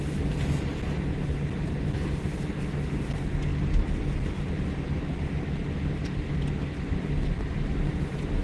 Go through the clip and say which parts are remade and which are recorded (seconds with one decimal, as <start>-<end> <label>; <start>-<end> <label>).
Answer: 0.0-8.4 recorded